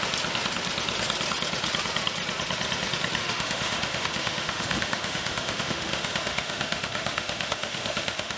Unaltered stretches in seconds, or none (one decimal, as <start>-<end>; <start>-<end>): 0.0-3.2